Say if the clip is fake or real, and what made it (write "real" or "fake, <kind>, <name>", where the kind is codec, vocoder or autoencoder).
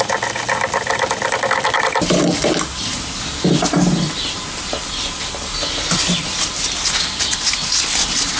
real